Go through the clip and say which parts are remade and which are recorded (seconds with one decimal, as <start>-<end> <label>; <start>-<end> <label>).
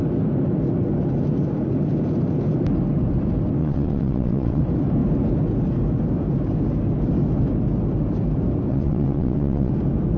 0.0-3.6 recorded; 3.6-4.6 remade; 4.6-8.7 recorded; 8.7-9.7 remade; 9.7-10.2 recorded